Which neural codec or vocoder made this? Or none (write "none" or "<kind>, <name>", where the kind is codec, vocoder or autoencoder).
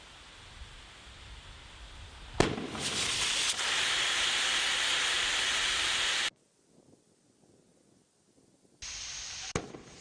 none